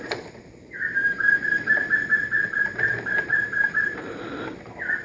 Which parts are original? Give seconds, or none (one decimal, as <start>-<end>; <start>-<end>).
0.0-1.0; 2.0-2.7; 4.2-5.0